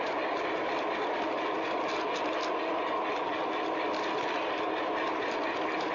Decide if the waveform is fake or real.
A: real